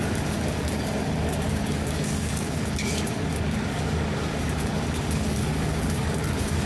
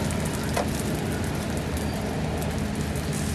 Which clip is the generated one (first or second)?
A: first